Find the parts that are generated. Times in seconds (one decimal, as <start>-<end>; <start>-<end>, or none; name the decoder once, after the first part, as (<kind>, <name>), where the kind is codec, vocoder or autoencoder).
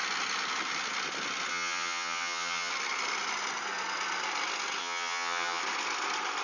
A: 1.5-2.7 (vocoder, HiFi-GAN); 4.8-5.6